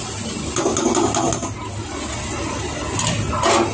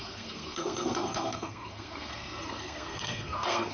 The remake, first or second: second